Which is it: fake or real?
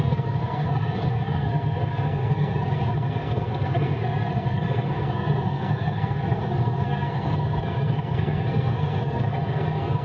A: fake